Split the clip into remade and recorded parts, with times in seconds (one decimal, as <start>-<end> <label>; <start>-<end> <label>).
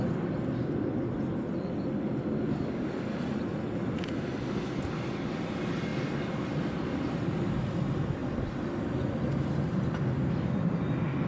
0.0-11.3 recorded